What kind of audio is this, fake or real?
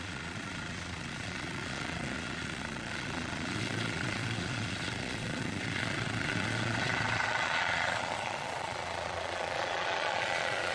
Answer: fake